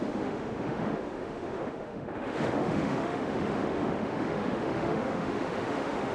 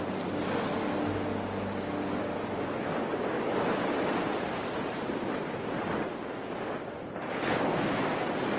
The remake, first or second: first